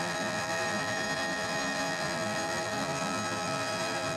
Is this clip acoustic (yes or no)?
no